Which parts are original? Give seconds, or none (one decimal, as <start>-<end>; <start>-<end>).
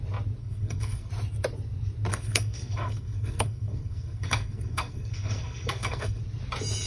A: 0.0-0.4; 1.1-2.1; 6.2-6.9